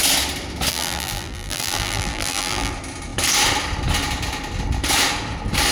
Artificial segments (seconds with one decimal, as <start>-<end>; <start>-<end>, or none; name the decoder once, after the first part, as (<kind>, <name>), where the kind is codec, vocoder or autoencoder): 0.7-2.7 (vocoder, BigVGAN v2)